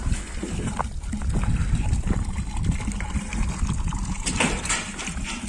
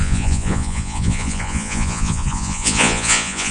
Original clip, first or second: first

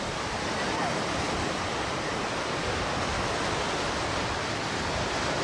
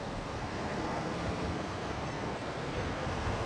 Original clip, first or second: first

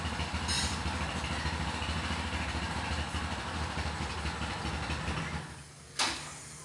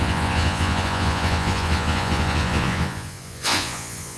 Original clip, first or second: first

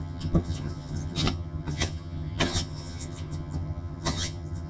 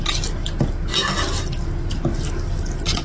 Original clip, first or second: second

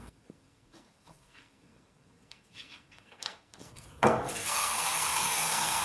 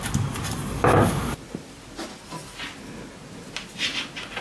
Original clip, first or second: second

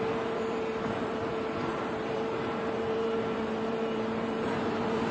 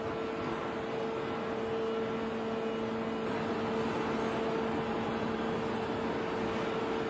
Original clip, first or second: second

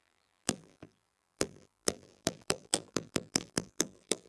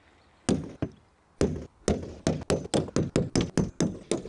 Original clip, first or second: second